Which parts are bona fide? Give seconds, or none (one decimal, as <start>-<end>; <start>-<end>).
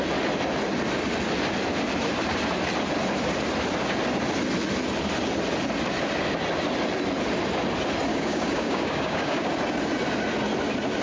0.0-8.1; 9.5-11.0